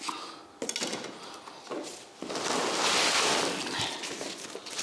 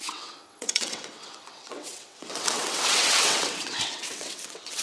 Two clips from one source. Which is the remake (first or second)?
second